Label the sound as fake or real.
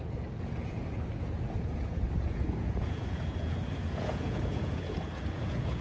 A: fake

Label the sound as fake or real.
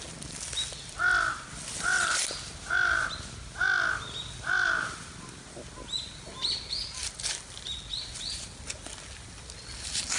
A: real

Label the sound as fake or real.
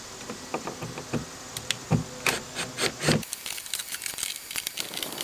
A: real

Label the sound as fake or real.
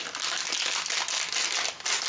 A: real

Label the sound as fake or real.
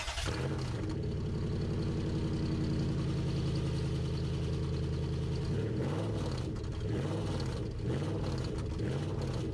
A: real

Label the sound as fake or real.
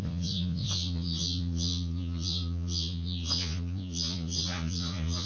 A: fake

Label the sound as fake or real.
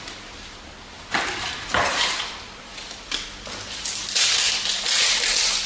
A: real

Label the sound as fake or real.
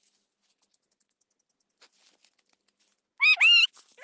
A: real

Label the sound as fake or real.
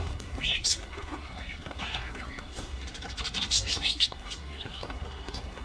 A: fake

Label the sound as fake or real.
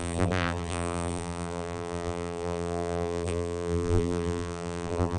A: fake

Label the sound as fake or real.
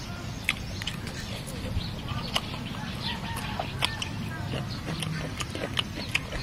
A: real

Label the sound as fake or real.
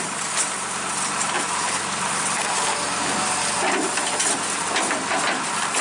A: real